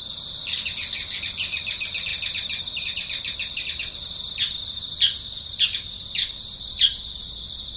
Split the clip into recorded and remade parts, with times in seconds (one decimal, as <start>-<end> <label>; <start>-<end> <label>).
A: 0.0-7.8 recorded